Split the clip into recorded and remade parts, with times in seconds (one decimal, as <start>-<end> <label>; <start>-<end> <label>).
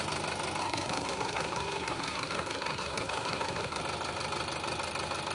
0.0-0.6 recorded; 0.6-3.8 remade; 3.8-5.3 recorded